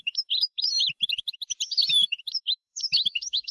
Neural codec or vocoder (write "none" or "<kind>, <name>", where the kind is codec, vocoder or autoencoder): vocoder, BigVGAN v2